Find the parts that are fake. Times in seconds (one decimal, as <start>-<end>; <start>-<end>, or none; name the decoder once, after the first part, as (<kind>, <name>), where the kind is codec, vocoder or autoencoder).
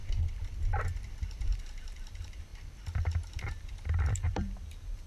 1.6-2.5 (vocoder, BigVGAN v2); 3.3-5.1